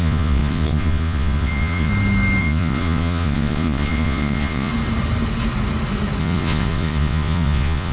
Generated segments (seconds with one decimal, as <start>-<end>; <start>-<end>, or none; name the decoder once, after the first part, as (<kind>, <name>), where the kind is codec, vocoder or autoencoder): 0.0-1.9 (vocoder, Vocos); 2.4-4.7; 6.2-7.9